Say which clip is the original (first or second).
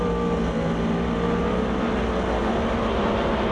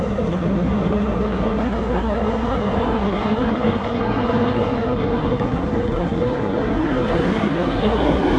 first